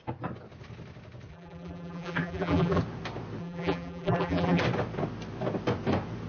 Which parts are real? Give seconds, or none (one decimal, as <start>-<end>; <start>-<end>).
0.0-1.3; 2.8-3.4; 4.6-6.3

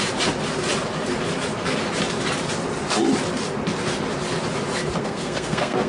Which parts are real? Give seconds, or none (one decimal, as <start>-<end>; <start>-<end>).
0.0-5.0

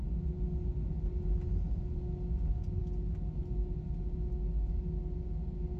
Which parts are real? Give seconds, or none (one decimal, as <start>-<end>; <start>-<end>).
0.0-5.8

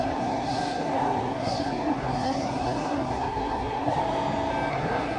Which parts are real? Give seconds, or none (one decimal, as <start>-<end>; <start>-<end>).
4.0-4.7

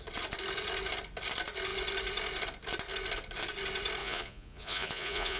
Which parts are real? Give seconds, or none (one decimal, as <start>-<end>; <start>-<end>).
0.0-4.0